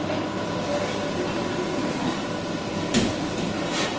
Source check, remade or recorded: recorded